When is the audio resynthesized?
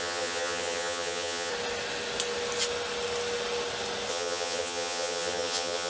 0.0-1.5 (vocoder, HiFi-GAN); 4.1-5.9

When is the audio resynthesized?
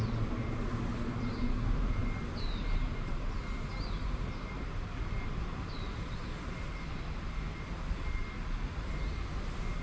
none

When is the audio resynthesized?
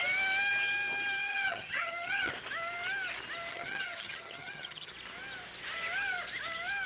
1.2-2.3 (vocoder, HiFi-GAN); 3.5-4.9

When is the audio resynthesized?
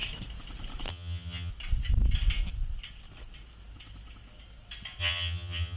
0.9-1.5 (vocoder, HiFi-GAN); 5.0-5.8